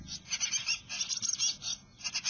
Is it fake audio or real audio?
real